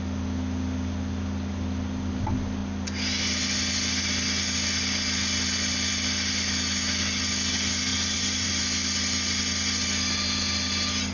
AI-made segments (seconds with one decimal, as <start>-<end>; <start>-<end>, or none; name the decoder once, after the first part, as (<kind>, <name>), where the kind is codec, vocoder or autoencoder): 7.9-8.5 (vocoder, BigVGAN v2)